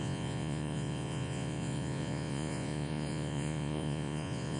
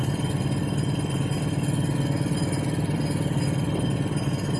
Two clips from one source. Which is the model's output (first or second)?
first